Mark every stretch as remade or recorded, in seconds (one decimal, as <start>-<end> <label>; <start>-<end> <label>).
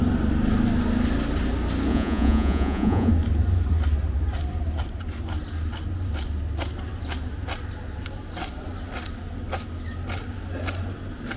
0.0-1.9 recorded; 1.9-3.1 remade; 3.1-11.4 recorded